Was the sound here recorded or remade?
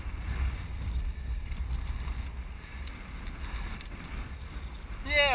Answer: recorded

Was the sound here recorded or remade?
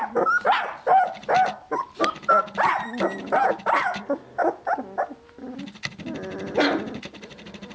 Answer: recorded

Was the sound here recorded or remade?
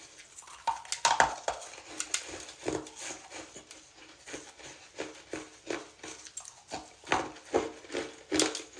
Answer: recorded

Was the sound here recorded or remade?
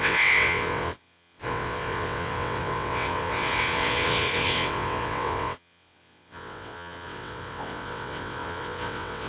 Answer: remade